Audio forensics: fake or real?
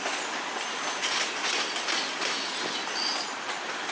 real